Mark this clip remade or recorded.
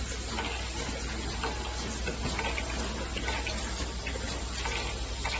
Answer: recorded